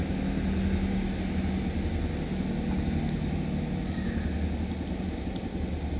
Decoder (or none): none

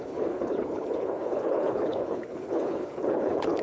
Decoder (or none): codec, HILCodec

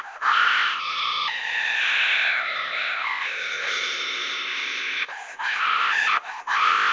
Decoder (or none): codec, ZipCodec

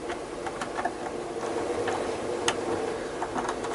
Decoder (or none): none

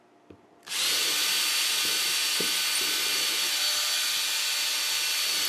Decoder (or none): none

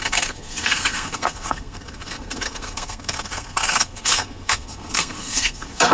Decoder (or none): codec, SNAC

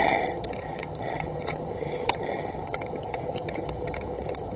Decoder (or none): vocoder, HiFi-GAN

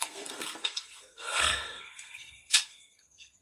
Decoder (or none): codec, SNAC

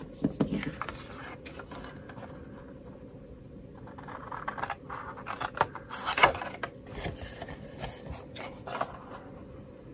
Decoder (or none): none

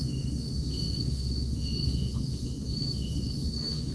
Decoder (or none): autoencoder, DAC-VAE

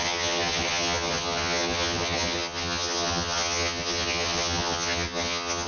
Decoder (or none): vocoder, HiFi-GAN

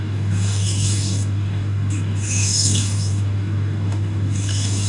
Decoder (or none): codec, DAC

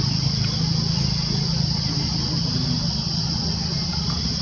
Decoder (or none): none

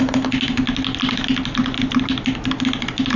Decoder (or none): none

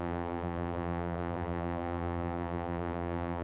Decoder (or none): vocoder, BigVGAN v2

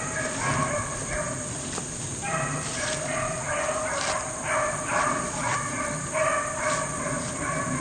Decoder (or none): none